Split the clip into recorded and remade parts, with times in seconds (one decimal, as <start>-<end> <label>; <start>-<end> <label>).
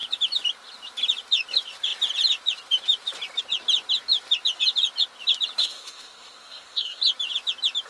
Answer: 0.0-5.6 recorded; 5.6-7.0 remade; 7.0-7.9 recorded